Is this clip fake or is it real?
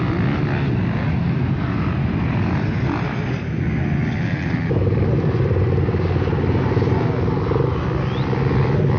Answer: real